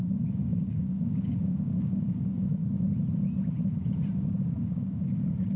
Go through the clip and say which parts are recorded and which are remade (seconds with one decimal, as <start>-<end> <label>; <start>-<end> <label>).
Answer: 0.0-2.6 remade; 2.6-4.4 recorded; 4.4-5.6 remade